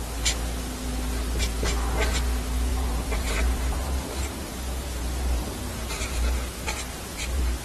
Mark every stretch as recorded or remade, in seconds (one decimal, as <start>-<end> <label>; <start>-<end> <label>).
0.0-2.7 recorded; 2.7-7.6 remade